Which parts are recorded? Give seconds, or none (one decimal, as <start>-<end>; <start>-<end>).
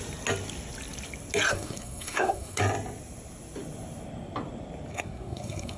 0.0-1.5; 2.6-4.9